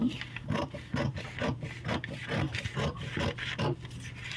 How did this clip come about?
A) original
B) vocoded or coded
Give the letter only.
A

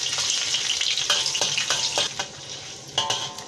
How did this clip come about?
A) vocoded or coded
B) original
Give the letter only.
B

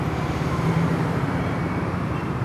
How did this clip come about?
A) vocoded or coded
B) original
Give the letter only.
A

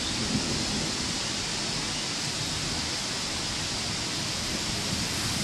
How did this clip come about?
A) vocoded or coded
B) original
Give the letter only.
B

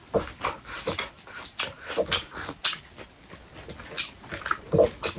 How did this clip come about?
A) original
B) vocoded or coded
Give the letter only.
A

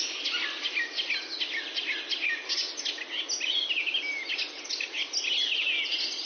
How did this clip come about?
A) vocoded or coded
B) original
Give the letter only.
B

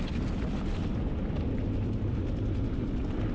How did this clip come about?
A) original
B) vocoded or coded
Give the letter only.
A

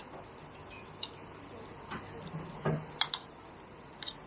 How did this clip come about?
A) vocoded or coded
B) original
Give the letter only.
B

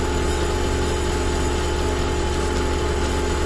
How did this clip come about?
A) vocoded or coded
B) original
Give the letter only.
B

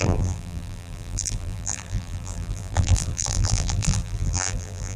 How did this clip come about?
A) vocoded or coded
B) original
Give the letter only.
A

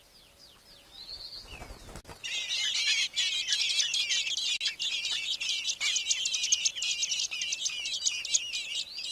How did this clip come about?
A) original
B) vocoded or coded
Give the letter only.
A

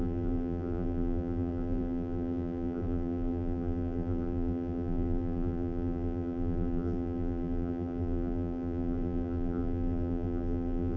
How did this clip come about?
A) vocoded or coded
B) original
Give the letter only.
A